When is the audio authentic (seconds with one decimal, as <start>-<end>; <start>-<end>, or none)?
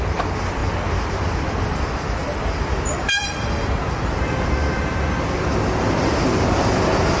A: 0.0-7.2